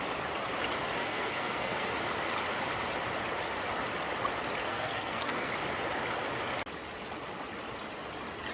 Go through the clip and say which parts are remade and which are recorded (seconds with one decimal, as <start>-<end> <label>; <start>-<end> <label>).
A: 0.0-1.0 recorded; 1.0-1.9 remade; 1.9-4.6 recorded; 4.6-5.5 remade; 5.5-8.5 recorded